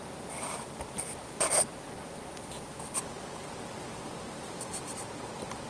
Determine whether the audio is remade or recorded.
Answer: recorded